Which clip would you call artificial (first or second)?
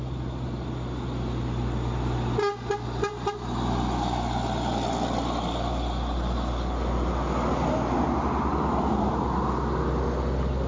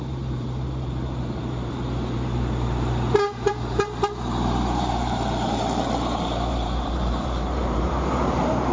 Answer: second